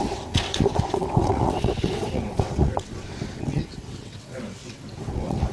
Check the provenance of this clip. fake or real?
fake